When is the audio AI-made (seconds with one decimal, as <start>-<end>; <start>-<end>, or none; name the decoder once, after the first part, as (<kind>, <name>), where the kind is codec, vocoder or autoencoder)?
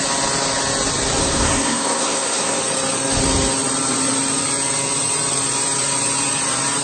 1.2-2.6 (codec, SNAC)